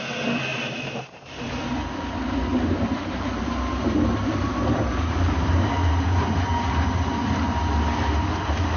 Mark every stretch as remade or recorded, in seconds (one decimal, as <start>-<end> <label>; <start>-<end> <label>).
0.0-0.5 recorded; 0.5-1.5 remade; 1.5-2.5 recorded; 2.5-5.7 remade; 5.7-8.8 recorded